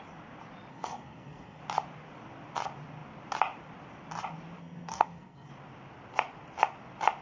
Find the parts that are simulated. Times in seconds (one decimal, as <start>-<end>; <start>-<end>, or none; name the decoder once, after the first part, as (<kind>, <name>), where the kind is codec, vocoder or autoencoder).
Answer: 0.7-1.6 (codec, SNAC); 4.6-5.5